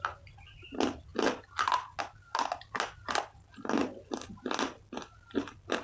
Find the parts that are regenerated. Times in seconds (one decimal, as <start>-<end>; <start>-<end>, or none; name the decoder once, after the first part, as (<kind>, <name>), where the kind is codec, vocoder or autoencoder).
none